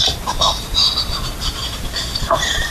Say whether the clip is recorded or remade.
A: remade